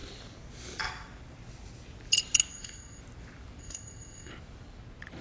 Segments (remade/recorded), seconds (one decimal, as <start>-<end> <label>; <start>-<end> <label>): 0.0-2.5 recorded; 2.5-3.0 remade; 3.0-3.6 recorded; 3.6-4.3 remade; 4.3-5.2 recorded